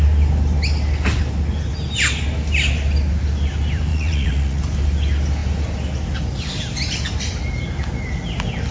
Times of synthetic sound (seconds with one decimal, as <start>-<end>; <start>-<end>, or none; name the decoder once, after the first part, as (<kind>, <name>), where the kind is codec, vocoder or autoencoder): 3.9-4.6 (vocoder, Vocos)